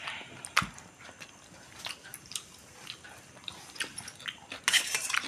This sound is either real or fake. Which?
real